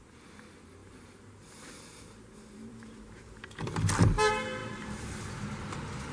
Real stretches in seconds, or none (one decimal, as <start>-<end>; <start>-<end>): 0.0-0.8; 3.5-4.6; 5.2-6.1